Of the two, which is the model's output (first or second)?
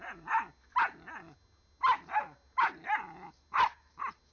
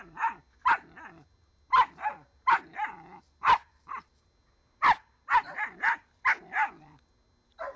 second